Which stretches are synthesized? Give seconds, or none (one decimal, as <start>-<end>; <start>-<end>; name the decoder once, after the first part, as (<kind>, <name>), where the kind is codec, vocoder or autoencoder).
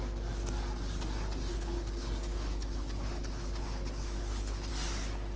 1.5-4.7 (codec, HILCodec)